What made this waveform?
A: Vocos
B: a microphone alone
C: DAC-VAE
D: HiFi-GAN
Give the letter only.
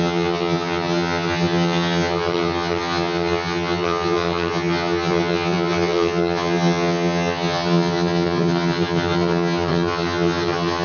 D